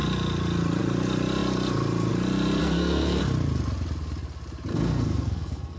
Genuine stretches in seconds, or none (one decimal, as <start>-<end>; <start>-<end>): 0.0-2.6; 3.2-4.7